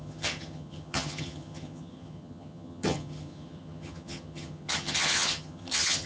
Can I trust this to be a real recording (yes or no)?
no